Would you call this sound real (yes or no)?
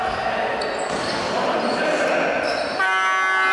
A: yes